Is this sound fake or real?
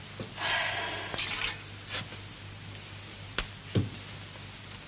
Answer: real